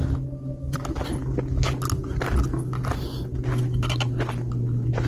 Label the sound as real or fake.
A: real